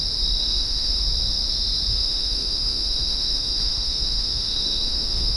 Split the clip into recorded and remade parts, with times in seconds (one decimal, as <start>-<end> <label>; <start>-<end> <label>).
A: 0.0-0.4 recorded; 0.4-1.0 remade; 1.0-1.9 recorded; 1.9-5.4 remade